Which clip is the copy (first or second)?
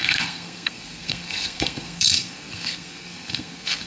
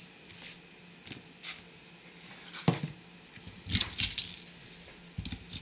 first